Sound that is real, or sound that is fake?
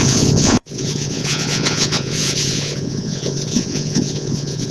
fake